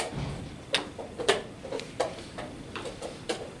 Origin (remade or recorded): recorded